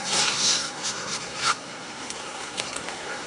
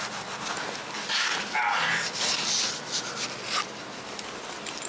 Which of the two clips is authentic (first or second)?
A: second